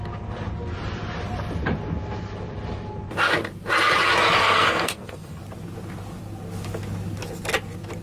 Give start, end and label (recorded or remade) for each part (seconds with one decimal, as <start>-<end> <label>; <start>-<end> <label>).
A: 0.0-4.4 recorded; 4.4-5.4 remade; 5.4-8.0 recorded